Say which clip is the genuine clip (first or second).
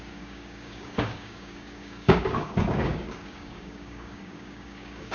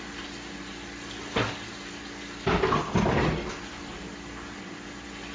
second